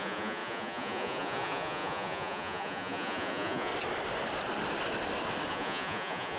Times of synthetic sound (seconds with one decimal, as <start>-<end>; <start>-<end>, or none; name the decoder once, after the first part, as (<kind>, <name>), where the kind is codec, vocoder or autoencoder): 0.0-3.7 (vocoder, Vocos); 5.5-6.4